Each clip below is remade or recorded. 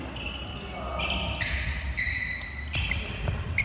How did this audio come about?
recorded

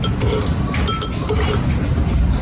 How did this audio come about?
recorded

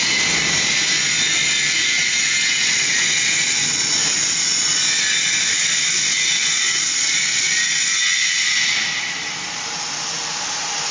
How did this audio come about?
recorded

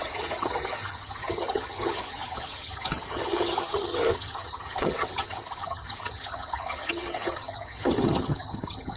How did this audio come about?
remade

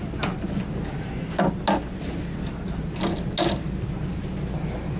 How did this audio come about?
recorded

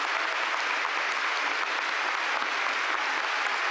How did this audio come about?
recorded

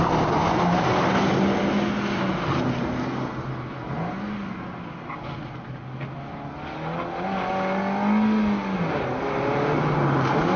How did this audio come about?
recorded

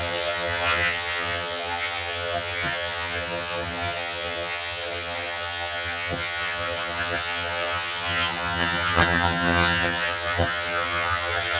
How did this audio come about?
remade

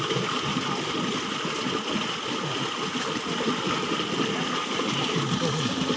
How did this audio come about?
recorded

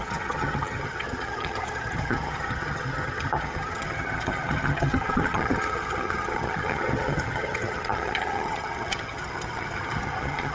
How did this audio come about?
remade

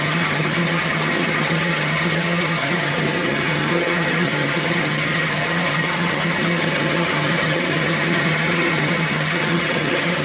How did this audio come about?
remade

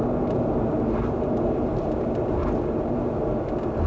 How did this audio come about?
recorded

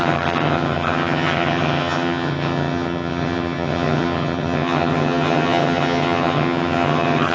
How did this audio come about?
remade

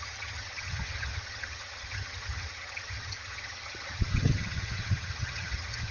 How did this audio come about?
remade